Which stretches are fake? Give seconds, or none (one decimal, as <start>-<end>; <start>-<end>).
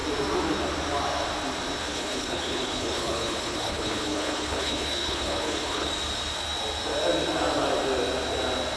1.8-5.9